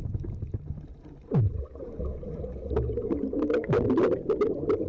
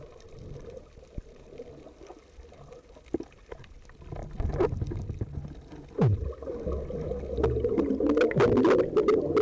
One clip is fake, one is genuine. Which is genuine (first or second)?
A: second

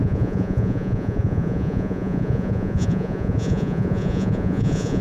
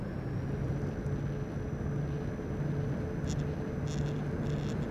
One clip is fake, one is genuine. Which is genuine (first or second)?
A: second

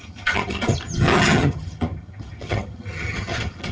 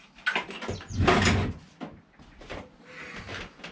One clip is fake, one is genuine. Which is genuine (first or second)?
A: second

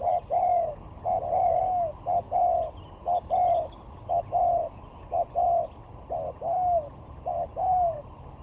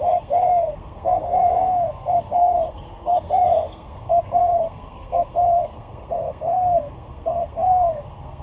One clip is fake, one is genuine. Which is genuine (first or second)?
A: first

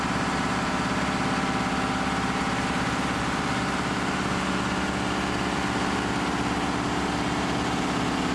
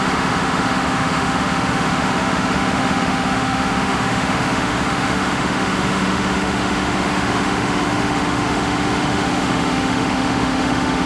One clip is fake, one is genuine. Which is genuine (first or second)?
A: first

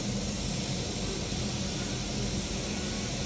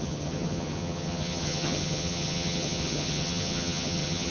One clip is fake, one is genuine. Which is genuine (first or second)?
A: first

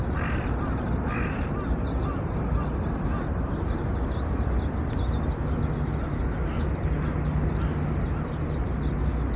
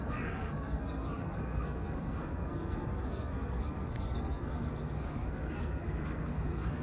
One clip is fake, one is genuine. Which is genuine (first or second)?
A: first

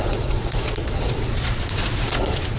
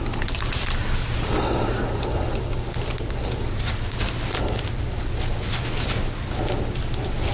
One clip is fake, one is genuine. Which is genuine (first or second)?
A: second